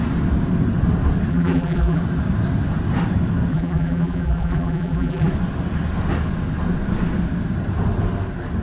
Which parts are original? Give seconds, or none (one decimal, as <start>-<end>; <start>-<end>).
0.0-1.3; 2.0-3.5; 5.3-8.6